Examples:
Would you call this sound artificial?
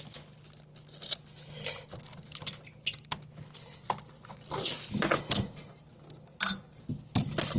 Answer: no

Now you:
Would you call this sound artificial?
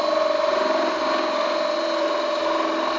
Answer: no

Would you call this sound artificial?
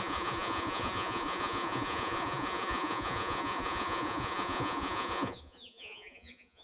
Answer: yes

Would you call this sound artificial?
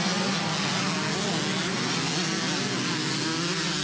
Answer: no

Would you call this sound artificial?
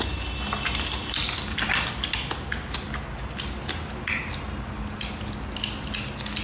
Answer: no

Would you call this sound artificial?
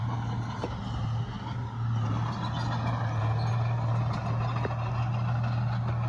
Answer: no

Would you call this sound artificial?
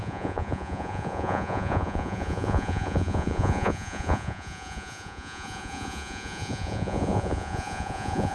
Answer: yes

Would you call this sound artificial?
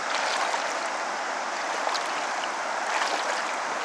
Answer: no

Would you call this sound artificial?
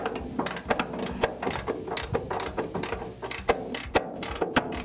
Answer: no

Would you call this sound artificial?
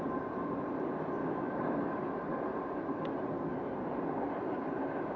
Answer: no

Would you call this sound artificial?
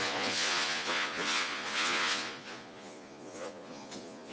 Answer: yes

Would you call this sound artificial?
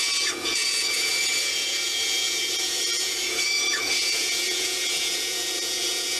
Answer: yes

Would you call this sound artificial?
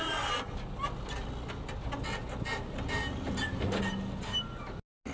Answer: no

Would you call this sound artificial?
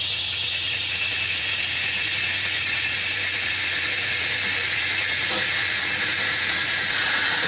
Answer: yes